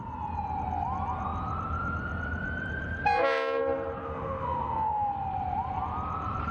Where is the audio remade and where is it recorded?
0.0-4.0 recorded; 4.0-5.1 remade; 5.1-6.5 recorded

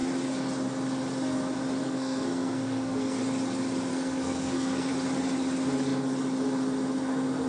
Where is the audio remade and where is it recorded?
0.0-1.8 recorded; 1.8-3.2 remade; 3.2-3.9 recorded; 3.9-4.9 remade; 4.9-7.5 recorded

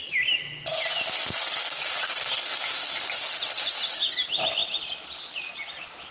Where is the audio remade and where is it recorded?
0.0-6.1 recorded

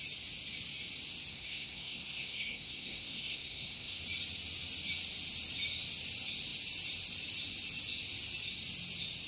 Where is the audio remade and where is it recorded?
0.0-1.3 recorded; 1.3-4.0 remade; 4.0-9.3 recorded

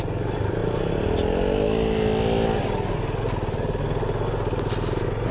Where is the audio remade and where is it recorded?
0.0-5.3 recorded

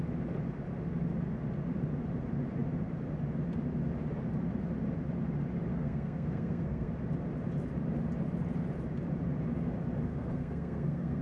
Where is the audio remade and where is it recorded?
0.0-5.7 recorded; 5.7-6.9 remade; 6.9-10.1 recorded; 10.1-11.2 remade